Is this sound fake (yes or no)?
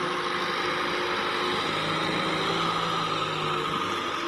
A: no